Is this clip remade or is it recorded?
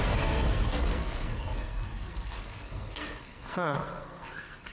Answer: remade